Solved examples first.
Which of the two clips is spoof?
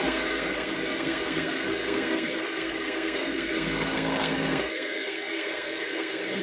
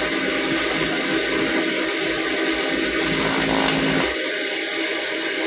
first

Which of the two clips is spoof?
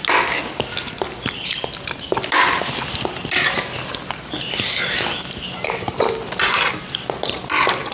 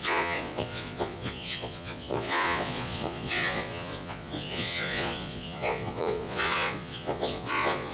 second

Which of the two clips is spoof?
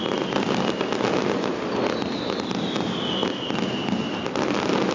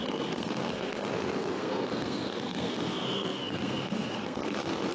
second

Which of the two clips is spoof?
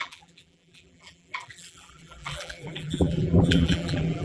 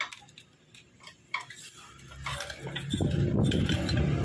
first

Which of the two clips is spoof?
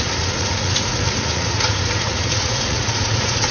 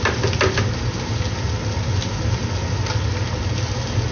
first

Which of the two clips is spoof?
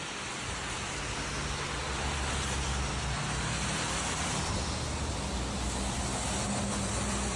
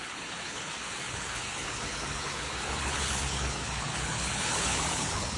second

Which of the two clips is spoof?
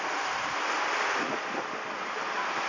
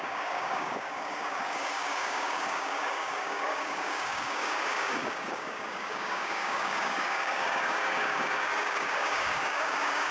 second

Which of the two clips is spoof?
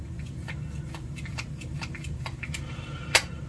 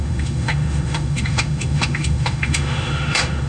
second